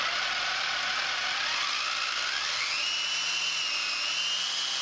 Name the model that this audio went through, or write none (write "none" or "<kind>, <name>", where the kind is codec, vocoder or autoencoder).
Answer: none